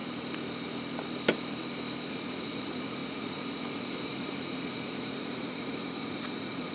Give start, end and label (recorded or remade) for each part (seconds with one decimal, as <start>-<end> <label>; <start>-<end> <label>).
0.0-2.1 recorded; 2.1-6.7 remade